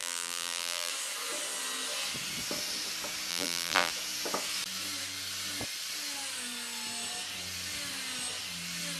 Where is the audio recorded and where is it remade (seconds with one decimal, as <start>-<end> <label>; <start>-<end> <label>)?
0.0-0.9 remade; 0.9-3.3 recorded; 3.3-3.9 remade; 3.9-9.0 recorded